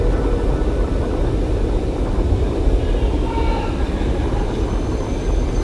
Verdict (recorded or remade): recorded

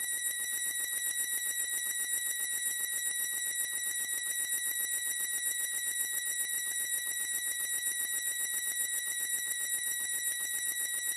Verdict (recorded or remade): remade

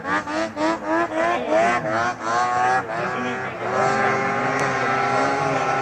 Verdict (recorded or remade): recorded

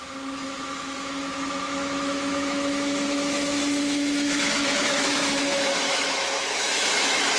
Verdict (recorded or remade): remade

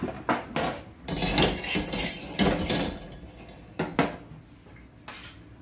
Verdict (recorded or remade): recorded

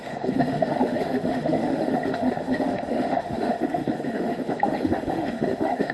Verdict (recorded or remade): remade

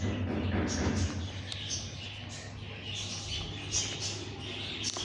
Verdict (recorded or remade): recorded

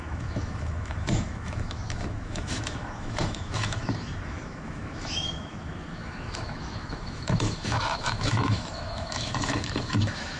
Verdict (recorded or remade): remade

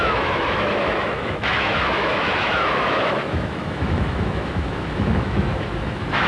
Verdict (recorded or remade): remade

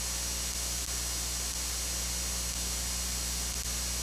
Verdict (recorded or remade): recorded